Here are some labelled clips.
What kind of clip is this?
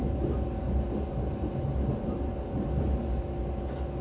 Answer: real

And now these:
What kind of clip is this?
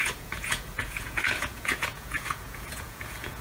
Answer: fake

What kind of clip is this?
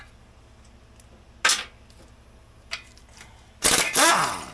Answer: real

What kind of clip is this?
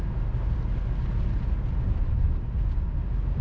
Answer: real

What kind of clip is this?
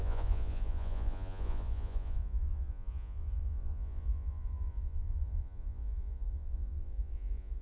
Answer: fake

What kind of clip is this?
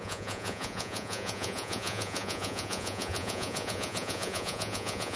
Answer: fake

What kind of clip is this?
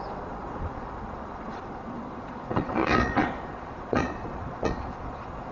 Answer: fake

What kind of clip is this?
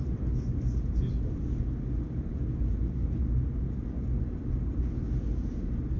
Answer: real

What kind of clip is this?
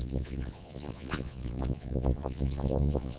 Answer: fake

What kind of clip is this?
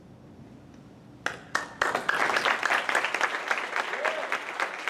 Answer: real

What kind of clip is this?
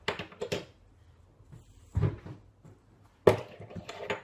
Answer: real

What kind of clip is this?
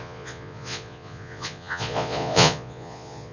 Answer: fake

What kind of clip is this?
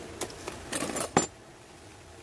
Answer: real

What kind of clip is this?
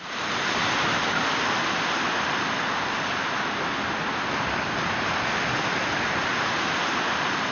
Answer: real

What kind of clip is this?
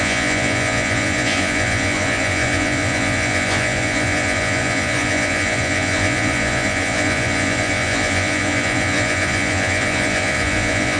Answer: fake